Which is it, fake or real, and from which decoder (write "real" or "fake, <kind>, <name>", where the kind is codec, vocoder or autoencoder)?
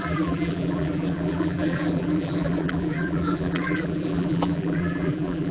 fake, vocoder, BigVGAN v2